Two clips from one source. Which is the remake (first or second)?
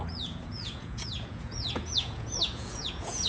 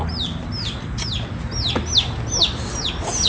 first